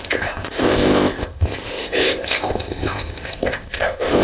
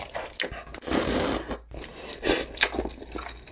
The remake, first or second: first